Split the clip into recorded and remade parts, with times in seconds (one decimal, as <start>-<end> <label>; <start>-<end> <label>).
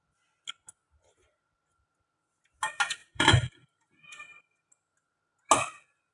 0.0-3.0 recorded; 3.0-4.7 remade; 4.7-6.1 recorded